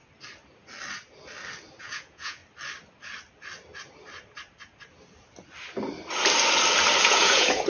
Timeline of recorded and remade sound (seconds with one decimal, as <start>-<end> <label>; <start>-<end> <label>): 0.0-1.8 recorded; 1.8-2.4 remade; 2.4-7.0 recorded; 7.0-7.7 remade